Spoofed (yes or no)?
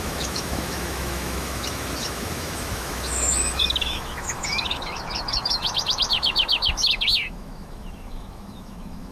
yes